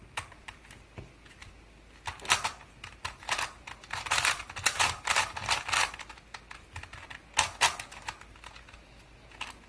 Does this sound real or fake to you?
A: real